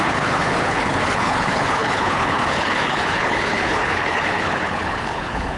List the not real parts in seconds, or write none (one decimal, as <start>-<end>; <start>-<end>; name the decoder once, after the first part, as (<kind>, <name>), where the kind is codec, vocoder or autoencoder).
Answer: 0.0-5.6 (codec, HILCodec)